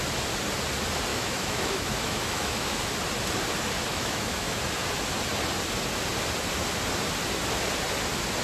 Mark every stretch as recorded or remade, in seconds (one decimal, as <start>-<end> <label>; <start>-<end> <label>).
0.0-1.1 recorded; 1.1-2.8 remade; 2.8-3.9 recorded; 3.9-4.6 remade; 4.6-8.4 recorded